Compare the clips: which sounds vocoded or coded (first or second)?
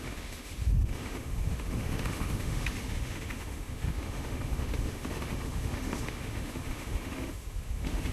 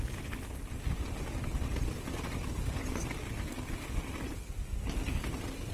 first